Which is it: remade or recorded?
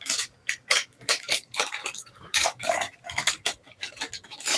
remade